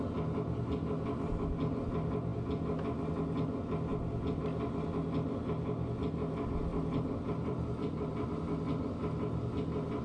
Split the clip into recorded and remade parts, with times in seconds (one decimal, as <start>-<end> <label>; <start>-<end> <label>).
0.0-6.7 recorded; 6.7-8.3 remade; 8.3-10.0 recorded